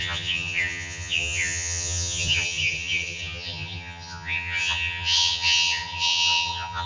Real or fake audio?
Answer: fake